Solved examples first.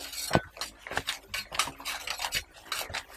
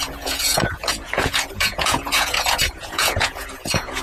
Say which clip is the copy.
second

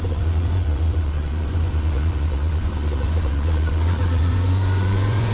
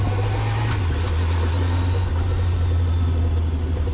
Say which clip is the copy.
first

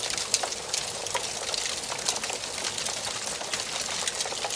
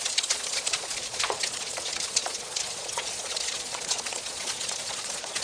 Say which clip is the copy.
second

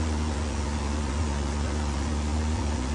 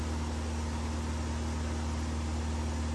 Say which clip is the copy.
first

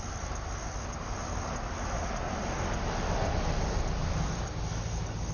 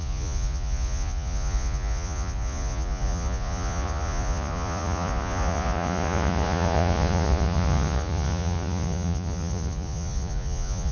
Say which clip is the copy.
second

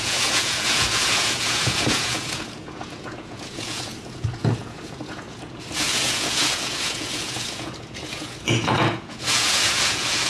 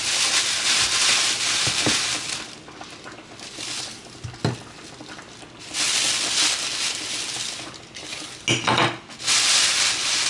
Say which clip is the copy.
first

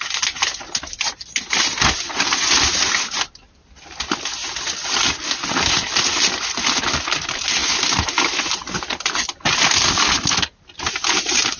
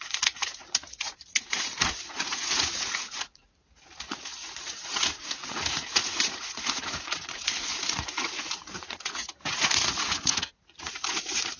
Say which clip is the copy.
second